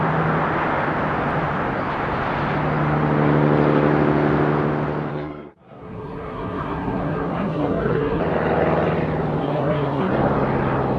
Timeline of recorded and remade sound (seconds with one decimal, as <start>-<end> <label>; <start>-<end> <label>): 0.0-5.1 recorded; 5.1-8.2 remade; 8.2-9.4 recorded; 9.4-10.1 remade; 10.1-11.0 recorded